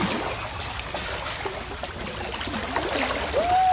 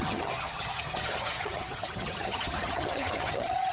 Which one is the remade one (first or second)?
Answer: second